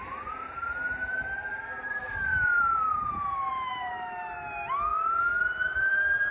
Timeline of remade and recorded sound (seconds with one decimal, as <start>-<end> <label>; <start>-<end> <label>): 0.0-2.3 recorded; 2.3-3.9 remade; 3.9-6.3 recorded